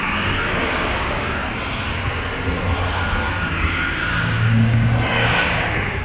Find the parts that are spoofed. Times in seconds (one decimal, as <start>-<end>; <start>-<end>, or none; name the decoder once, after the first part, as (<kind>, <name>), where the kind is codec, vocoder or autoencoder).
0.0-1.4 (codec, DAC); 3.4-6.0